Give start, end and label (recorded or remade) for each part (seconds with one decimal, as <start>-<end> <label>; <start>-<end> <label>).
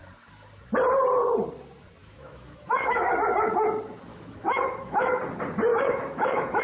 0.0-2.0 recorded; 2.0-3.1 remade; 3.1-4.1 recorded; 4.1-5.2 remade; 5.2-5.7 recorded; 5.7-6.6 remade